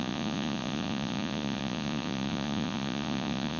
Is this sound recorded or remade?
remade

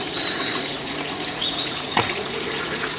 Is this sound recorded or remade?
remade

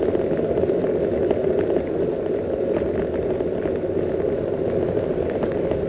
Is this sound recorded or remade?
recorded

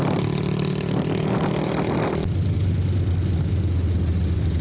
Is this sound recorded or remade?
recorded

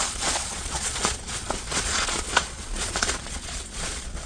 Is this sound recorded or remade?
remade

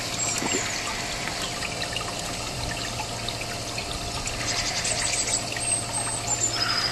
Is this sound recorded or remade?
recorded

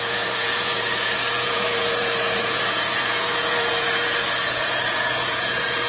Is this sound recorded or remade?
remade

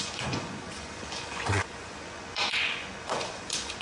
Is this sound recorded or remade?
remade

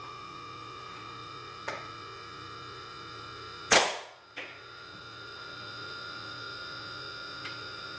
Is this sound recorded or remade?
remade